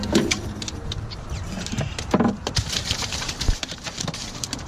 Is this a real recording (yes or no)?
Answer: no